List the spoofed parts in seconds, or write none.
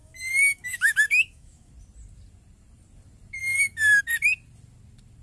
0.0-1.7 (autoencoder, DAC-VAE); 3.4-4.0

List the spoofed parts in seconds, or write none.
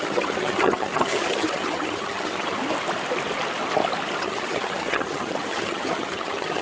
0.0-2.6 (vocoder, HiFi-GAN); 4.2-6.6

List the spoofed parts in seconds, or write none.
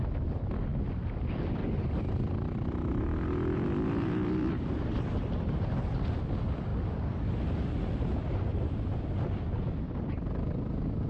none